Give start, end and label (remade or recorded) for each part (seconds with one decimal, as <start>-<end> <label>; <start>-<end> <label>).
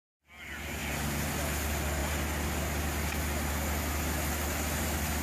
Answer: 0.0-5.2 recorded